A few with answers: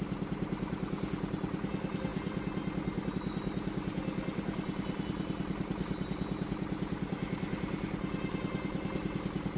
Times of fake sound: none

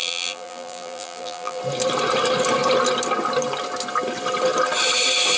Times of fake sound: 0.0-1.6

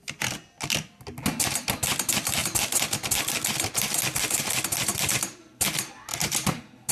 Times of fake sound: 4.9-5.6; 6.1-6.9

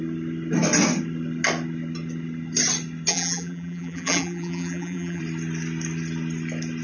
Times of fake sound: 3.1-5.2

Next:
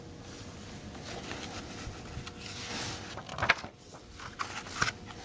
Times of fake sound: none

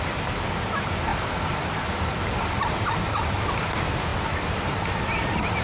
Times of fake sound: none